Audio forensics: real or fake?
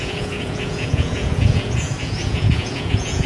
fake